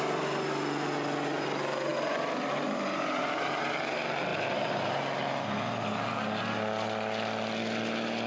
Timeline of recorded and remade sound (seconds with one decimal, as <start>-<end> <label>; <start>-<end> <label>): 0.0-8.3 recorded